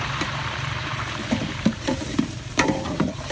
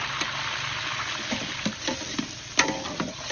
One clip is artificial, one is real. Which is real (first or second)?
second